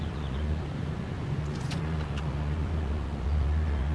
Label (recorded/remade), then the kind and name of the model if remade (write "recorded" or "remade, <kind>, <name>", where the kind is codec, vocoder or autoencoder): remade, vocoder, Vocos